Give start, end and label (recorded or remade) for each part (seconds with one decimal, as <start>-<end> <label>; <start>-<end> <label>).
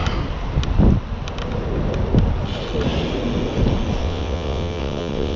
0.0-4.0 recorded; 4.0-5.4 remade